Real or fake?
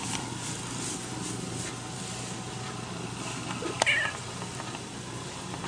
real